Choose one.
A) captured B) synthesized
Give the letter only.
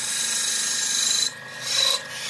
A